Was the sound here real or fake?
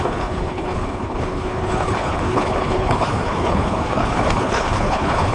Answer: fake